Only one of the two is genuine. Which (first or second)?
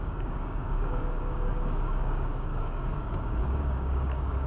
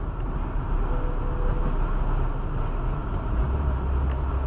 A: second